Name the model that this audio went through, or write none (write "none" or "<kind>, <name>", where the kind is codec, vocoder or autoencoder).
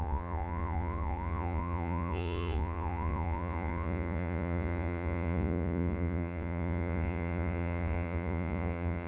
vocoder, Vocos